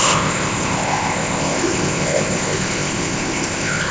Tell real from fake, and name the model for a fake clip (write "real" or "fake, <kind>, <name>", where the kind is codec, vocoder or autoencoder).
fake, codec, ZipCodec